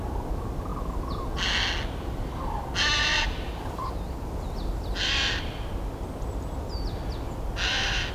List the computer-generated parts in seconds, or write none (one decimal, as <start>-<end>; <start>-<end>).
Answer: none

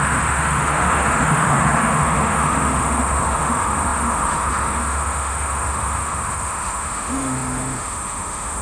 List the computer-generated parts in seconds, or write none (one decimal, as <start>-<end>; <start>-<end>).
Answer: 0.0-8.6

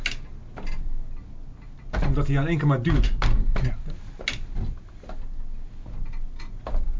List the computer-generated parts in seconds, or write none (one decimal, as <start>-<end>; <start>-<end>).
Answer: none

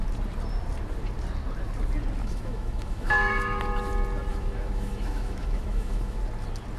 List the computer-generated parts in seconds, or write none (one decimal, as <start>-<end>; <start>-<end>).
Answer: 2.2-3.6; 4.3-6.2

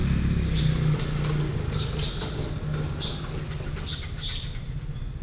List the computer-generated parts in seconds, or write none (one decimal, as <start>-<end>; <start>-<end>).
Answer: none